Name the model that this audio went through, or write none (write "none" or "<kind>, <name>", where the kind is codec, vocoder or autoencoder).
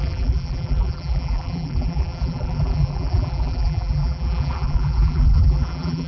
vocoder, BigVGAN v2